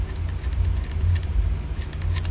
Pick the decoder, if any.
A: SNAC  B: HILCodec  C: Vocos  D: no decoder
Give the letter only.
D